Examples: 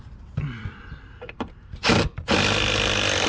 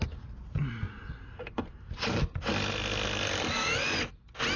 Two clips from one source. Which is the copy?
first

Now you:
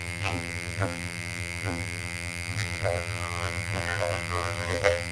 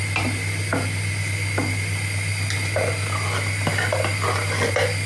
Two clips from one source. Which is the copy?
first